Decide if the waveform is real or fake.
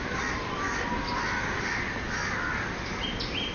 real